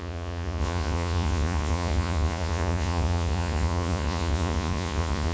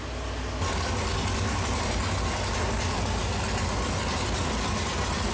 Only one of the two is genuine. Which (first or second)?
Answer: second